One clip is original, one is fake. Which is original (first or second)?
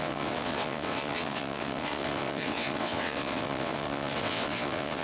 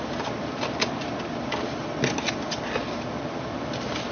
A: second